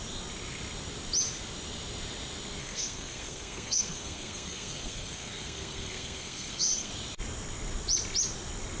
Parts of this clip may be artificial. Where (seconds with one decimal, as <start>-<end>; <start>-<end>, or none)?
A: 2.6-6.9

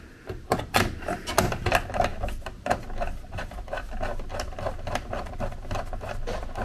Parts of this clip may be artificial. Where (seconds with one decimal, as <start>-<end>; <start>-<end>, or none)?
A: none

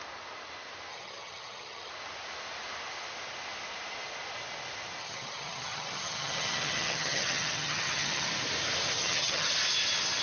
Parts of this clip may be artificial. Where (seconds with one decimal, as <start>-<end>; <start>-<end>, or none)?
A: 0.9-1.9; 5.0-8.3; 9.0-9.5

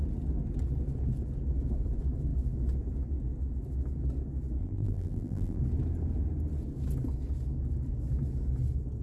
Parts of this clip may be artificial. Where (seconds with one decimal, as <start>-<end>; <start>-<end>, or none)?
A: 4.6-5.6

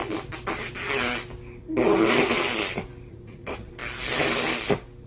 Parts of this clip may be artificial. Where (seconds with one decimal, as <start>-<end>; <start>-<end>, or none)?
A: 3.1-3.8